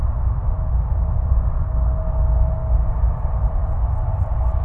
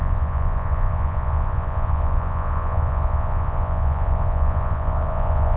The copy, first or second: second